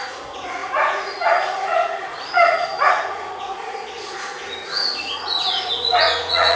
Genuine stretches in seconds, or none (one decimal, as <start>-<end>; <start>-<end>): none